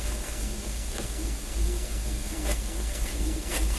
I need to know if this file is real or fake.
fake